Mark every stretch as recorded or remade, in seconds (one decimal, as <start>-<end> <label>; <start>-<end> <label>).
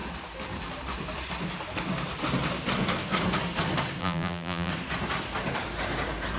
0.0-4.0 recorded; 4.0-4.7 remade; 4.7-6.4 recorded